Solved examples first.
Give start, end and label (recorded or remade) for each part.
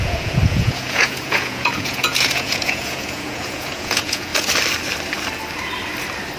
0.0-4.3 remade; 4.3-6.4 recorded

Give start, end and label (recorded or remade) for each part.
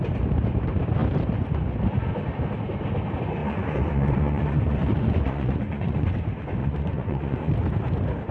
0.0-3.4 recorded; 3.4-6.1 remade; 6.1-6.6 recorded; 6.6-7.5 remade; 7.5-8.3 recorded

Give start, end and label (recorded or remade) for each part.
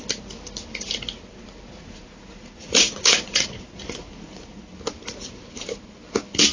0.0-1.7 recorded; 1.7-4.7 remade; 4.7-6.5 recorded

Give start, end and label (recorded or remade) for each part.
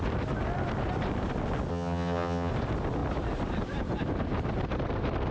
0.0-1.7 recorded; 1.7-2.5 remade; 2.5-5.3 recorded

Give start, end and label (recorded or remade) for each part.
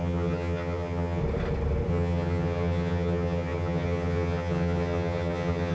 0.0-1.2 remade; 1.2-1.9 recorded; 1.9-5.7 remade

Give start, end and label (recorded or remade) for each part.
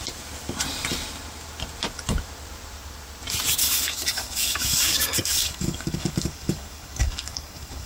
0.0-3.6 recorded; 3.6-7.9 remade